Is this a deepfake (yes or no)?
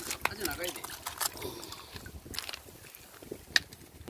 no